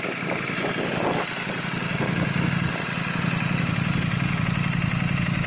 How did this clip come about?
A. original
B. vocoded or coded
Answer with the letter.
A